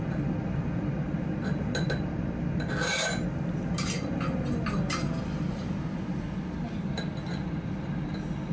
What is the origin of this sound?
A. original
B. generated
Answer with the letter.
A